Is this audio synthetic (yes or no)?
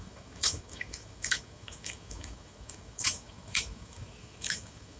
yes